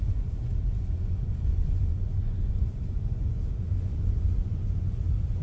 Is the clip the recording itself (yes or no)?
no